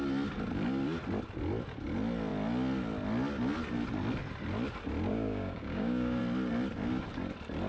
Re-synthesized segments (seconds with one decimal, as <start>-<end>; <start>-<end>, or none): 5.1-6.2